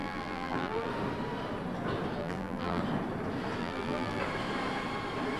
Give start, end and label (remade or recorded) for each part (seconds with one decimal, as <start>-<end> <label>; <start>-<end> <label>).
0.0-0.9 remade; 0.9-2.2 recorded; 2.2-2.8 remade; 2.8-3.6 recorded; 3.6-4.2 remade; 4.2-5.4 recorded